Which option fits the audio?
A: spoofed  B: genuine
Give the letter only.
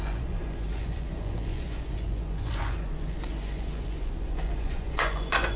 A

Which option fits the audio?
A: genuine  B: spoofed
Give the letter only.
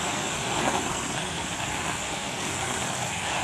B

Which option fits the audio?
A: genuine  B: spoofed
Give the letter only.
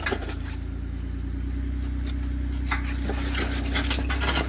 A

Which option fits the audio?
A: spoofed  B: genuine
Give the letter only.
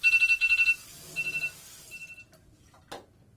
B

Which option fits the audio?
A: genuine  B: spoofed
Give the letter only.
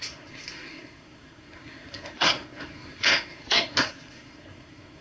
B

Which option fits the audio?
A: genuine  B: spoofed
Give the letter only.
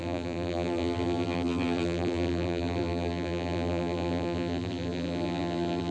B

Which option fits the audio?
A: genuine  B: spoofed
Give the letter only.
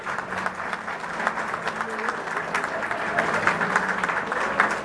A